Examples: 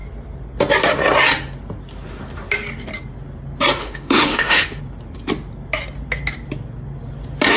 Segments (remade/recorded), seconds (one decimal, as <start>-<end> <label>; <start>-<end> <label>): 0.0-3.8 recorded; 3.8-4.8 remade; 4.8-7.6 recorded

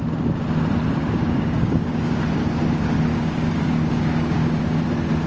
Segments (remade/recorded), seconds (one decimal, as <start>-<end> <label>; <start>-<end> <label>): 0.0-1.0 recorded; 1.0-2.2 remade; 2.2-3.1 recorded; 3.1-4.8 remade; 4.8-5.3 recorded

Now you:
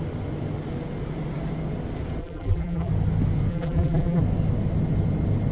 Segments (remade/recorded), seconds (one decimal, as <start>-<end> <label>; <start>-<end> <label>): 0.0-2.2 recorded; 2.2-2.9 remade; 2.9-3.5 recorded; 3.5-4.2 remade; 4.2-5.5 recorded